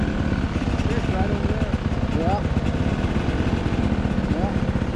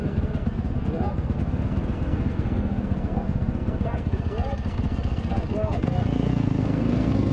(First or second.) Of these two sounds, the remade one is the second